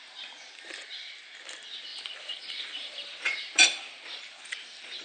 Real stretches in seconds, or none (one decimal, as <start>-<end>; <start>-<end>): 0.0-1.9